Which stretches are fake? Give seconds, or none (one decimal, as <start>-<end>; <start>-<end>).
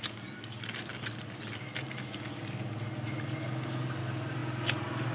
none